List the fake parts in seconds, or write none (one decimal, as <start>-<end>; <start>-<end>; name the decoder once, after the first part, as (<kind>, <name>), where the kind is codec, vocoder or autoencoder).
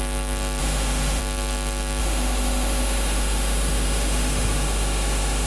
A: 0.6-1.2 (autoencoder, DAC-VAE); 2.0-5.5